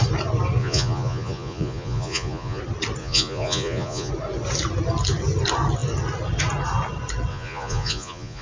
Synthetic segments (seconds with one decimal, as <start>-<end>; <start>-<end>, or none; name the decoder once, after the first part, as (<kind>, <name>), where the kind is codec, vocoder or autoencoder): 0.6-2.6 (vocoder, Vocos); 3.0-4.1; 7.3-8.4